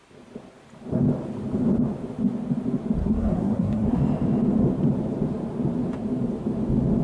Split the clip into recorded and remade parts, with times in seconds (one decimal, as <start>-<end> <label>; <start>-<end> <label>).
0.0-3.0 recorded; 3.0-4.0 remade; 4.0-7.0 recorded